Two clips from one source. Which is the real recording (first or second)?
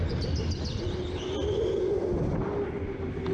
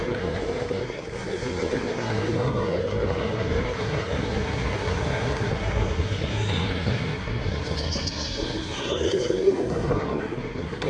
first